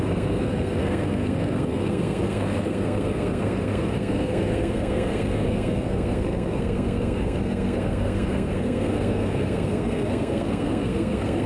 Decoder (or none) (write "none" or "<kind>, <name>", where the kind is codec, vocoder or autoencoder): codec, SNAC